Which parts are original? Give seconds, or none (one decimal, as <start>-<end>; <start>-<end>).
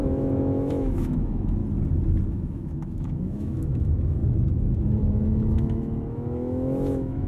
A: 1.6-2.3; 4.2-5.0